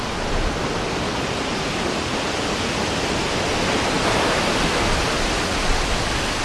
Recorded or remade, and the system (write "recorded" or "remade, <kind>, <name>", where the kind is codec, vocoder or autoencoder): recorded